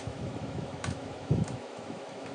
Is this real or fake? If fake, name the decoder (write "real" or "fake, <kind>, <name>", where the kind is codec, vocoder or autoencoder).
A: fake, autoencoder, DAC-VAE